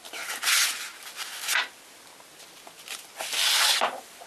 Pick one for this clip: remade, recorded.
recorded